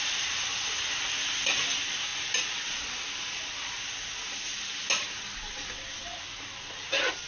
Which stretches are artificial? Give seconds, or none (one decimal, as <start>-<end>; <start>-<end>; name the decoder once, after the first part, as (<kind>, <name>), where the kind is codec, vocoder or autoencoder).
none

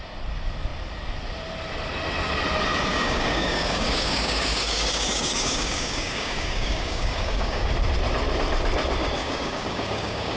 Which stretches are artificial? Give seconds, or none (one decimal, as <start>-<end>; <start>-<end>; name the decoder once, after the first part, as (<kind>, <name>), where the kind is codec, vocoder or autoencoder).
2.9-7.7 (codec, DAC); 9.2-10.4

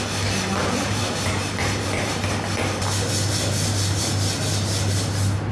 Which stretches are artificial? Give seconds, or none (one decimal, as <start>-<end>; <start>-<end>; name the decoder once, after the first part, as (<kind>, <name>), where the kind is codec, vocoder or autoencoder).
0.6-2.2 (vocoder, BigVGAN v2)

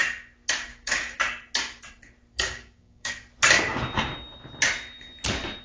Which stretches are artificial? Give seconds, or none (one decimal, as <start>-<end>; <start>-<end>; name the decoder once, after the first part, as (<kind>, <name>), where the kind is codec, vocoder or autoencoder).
0.7-1.2 (codec, DAC); 2.3-3.1

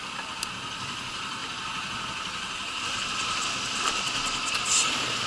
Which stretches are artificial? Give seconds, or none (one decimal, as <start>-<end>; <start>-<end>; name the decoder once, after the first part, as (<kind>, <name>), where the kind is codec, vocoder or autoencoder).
none

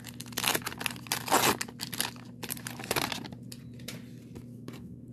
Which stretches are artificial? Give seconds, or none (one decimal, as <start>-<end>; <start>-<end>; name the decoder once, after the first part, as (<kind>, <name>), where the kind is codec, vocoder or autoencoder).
4.5-5.1 (codec, SNAC)

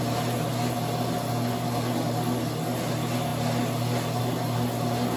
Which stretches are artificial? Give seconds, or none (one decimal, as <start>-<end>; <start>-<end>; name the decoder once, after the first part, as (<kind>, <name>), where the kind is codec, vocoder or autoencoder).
none